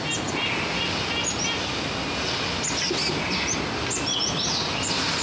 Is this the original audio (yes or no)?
yes